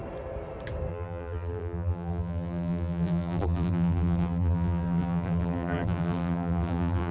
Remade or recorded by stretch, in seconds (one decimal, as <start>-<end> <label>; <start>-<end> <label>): 0.0-0.9 recorded; 0.9-7.1 remade